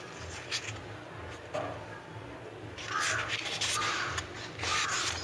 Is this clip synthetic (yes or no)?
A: no